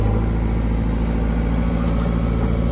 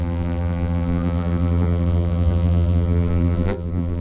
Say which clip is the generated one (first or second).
second